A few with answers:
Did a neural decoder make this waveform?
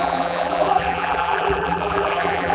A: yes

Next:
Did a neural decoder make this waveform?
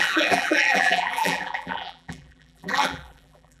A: yes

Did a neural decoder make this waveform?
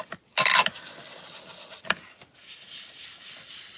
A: no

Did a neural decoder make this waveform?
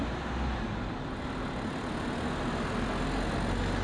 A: no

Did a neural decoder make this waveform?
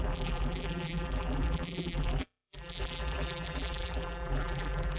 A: yes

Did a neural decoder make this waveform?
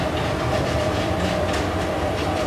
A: yes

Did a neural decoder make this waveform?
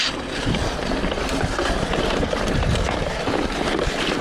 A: yes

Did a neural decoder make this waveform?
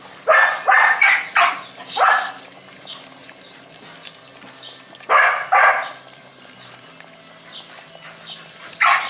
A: no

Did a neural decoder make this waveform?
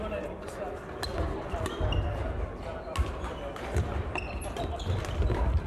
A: no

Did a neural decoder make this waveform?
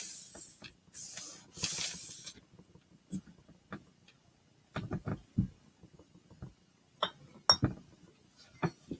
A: no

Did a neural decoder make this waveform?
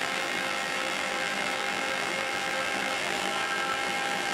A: yes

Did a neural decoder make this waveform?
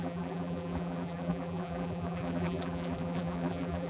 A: yes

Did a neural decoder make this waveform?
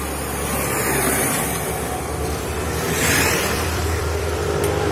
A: yes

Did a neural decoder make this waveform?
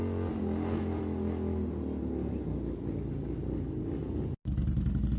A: no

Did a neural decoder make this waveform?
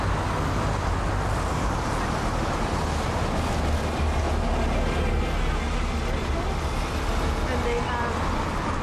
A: no